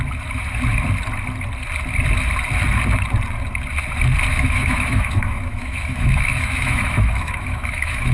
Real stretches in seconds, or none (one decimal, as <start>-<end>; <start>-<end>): 0.0-4.3